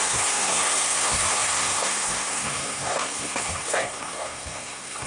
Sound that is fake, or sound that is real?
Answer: fake